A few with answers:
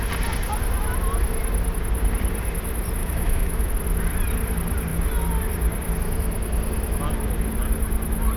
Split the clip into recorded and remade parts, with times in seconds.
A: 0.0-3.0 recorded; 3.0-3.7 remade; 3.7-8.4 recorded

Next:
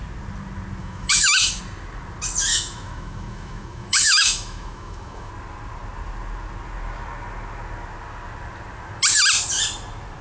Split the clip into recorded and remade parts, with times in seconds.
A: 0.0-0.8 recorded; 0.8-1.6 remade; 1.6-2.5 recorded; 2.5-5.3 remade; 5.3-10.2 recorded

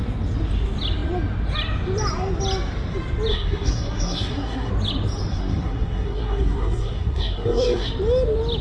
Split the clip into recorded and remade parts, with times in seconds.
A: 0.0-3.3 recorded; 3.3-4.7 remade; 4.7-5.3 recorded; 5.3-7.9 remade; 7.9-8.6 recorded

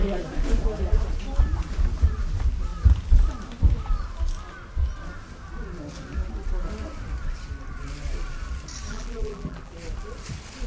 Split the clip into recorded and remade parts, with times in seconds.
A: 0.0-8.9 recorded; 8.9-9.7 remade; 9.7-10.7 recorded